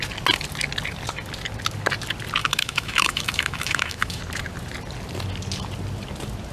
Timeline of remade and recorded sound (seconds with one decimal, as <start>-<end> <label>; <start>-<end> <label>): 0.0-2.4 recorded; 2.4-4.2 remade; 4.2-6.5 recorded